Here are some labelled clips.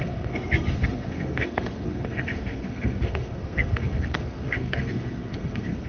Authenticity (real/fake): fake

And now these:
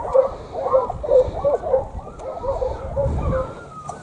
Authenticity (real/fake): real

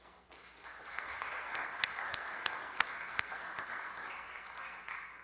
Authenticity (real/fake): fake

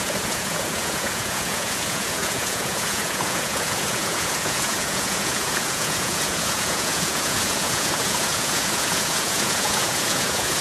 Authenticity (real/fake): fake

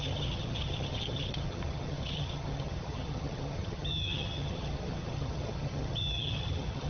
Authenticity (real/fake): fake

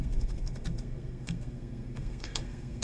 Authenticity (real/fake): fake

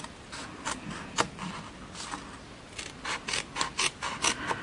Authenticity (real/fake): real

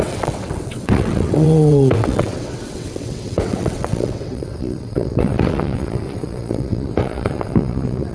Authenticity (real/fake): fake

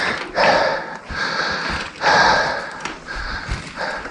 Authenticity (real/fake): real